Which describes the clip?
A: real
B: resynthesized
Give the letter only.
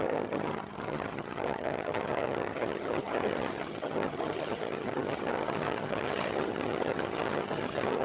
B